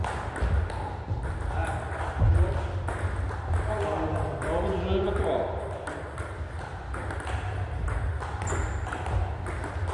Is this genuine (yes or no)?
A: yes